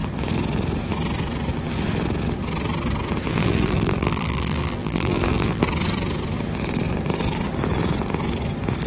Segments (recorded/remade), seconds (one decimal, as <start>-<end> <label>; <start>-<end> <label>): 0.0-3.3 recorded; 3.3-5.6 remade; 5.6-8.9 recorded